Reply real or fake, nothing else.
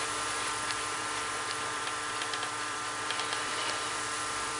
fake